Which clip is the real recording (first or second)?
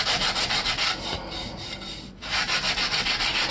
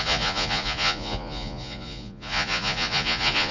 first